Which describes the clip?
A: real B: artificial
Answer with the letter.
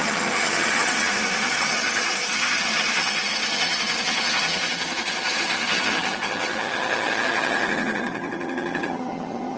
B